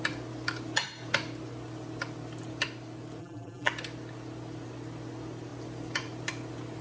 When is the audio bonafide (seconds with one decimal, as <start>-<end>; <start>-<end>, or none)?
0.0-3.2; 3.7-6.8